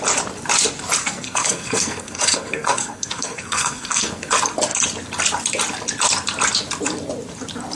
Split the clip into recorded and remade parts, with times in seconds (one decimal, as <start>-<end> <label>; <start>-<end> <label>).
0.0-1.0 recorded; 1.0-4.3 remade; 4.3-7.7 recorded